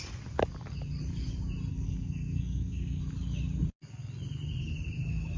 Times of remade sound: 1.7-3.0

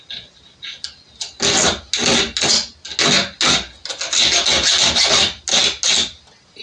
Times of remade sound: none

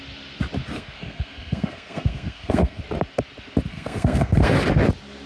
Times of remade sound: 0.6-2.8; 3.7-4.5

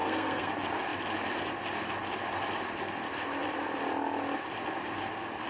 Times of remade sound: 0.0-0.5

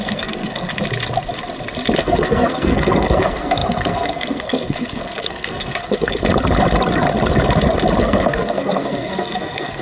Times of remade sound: 0.0-0.7; 2.0-6.2; 8.0-9.8

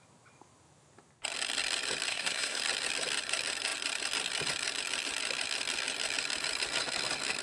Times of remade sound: 2.1-2.6

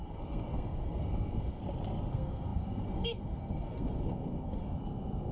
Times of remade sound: 0.0-1.6; 2.1-5.3